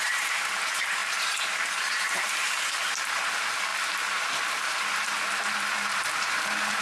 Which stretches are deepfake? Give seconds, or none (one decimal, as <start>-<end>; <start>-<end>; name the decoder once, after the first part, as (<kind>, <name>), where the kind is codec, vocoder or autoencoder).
0.0-6.8 (vocoder, BigVGAN v2)